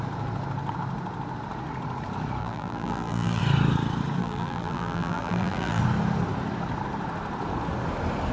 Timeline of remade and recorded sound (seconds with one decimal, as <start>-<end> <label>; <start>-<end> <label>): 0.0-2.4 recorded; 2.4-3.4 remade; 3.4-4.2 recorded; 4.2-5.8 remade; 5.8-8.3 recorded